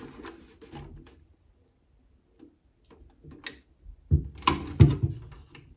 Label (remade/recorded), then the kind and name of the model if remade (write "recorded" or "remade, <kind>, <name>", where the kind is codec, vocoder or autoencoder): recorded